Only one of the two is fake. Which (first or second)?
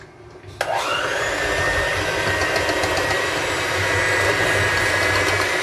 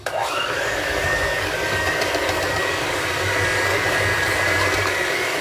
second